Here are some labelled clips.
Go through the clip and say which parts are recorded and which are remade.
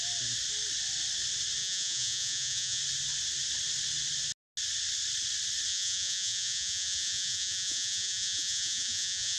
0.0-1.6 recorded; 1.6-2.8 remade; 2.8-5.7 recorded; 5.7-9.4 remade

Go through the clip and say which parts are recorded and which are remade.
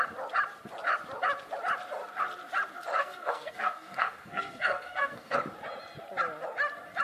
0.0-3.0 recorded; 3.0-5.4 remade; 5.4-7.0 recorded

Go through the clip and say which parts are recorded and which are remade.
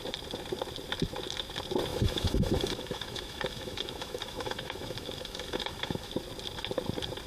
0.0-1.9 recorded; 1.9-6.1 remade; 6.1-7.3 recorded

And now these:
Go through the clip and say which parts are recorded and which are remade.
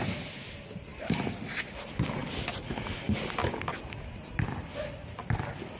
0.0-5.8 recorded